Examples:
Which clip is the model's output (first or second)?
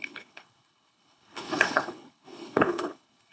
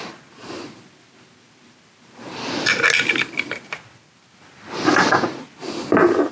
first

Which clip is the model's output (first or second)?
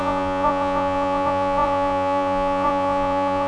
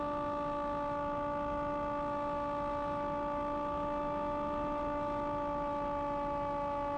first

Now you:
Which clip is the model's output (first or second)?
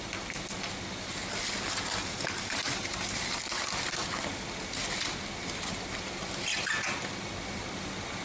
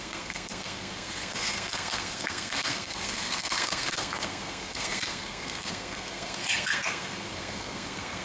second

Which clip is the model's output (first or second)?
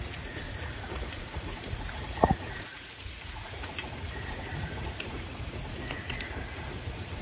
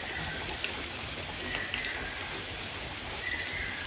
first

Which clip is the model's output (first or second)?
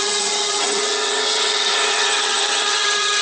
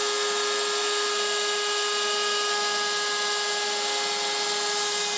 first